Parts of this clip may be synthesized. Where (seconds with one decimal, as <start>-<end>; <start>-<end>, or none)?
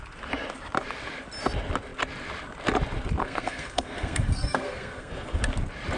3.2-5.4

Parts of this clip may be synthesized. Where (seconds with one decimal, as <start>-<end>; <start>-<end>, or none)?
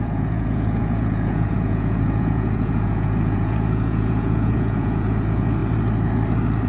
0.0-5.6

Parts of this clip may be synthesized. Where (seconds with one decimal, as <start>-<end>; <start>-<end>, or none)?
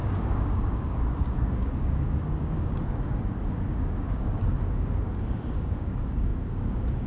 0.0-7.1